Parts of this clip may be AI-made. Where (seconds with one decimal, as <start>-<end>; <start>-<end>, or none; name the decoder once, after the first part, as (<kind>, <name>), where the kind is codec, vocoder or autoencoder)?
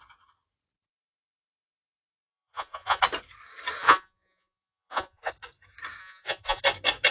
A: 2.2-3.0 (vocoder, Vocos); 3.8-5.3; 6.0-6.6